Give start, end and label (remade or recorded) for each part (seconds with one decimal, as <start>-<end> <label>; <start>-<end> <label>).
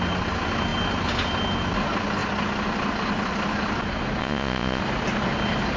0.0-4.2 recorded; 4.2-4.8 remade; 4.8-5.8 recorded